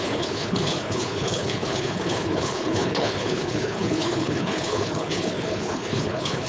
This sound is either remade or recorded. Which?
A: remade